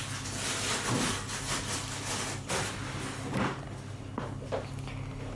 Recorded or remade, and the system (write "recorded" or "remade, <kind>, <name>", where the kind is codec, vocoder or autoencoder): recorded